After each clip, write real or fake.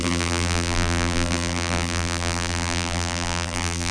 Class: fake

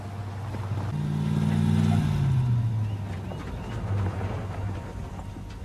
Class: real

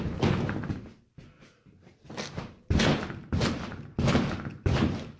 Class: real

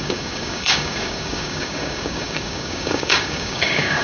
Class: fake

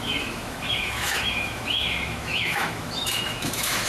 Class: fake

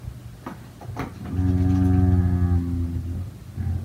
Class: real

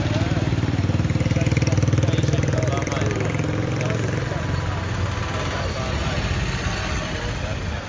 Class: real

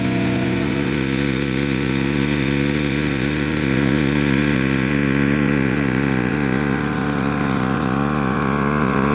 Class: fake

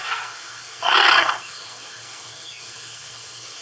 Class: fake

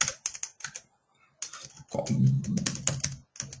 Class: real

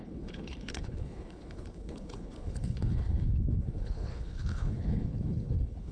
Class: fake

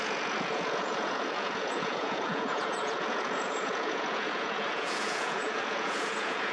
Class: fake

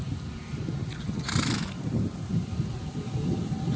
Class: real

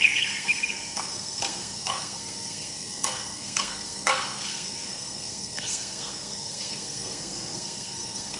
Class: fake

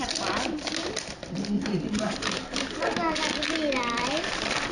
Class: fake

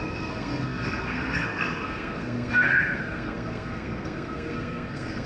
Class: fake